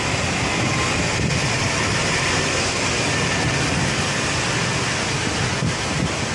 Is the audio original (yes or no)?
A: yes